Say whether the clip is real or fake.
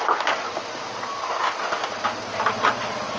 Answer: real